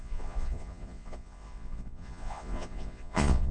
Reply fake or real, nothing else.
fake